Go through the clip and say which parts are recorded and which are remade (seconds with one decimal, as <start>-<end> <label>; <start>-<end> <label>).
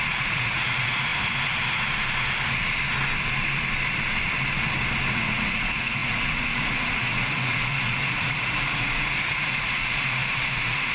0.0-1.1 remade; 1.1-5.1 recorded; 5.1-10.9 remade